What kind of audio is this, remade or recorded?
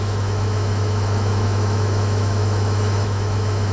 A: remade